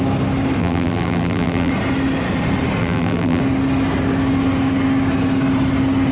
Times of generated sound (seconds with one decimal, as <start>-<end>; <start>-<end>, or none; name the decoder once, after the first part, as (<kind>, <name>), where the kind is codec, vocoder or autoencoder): 0.6-1.7 (vocoder, BigVGAN v2); 2.8-3.4